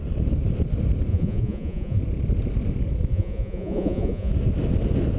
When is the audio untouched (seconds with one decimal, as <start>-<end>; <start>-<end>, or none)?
0.0-1.1; 2.0-3.1; 4.3-5.2